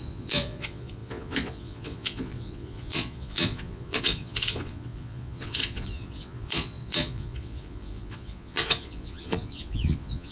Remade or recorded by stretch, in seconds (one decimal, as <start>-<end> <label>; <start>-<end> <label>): 0.0-10.3 remade